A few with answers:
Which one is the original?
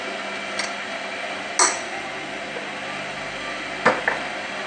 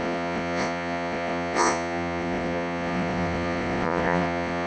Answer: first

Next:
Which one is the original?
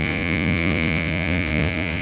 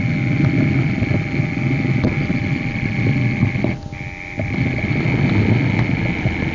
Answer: second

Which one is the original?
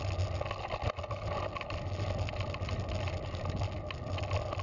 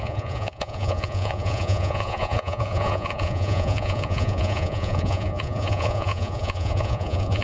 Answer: first